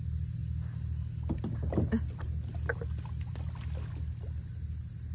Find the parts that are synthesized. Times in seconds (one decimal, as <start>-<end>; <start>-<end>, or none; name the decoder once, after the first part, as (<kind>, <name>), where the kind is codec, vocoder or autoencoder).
none